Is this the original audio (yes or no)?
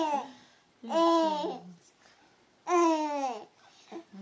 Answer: yes